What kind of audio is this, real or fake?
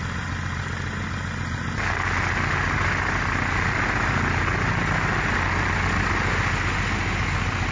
real